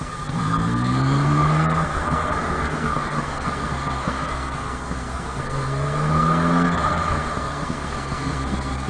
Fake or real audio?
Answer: fake